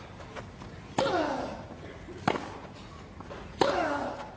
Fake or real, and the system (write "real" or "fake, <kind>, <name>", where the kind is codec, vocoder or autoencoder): real